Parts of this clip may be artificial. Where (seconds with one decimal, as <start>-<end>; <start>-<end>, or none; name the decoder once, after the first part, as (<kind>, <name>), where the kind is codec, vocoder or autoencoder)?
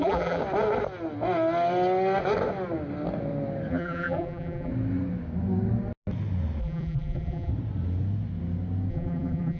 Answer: 0.0-0.4 (vocoder, BigVGAN v2); 3.7-4.7; 6.6-7.5; 8.9-9.6